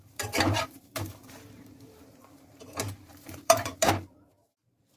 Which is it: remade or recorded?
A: remade